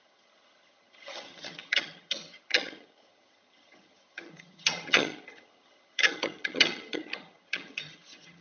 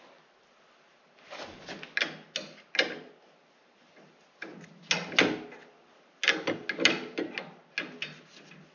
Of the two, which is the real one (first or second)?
second